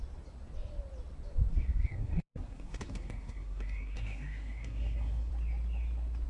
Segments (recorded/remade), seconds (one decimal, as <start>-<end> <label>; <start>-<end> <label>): 0.0-1.5 recorded; 1.5-5.3 remade; 5.3-6.3 recorded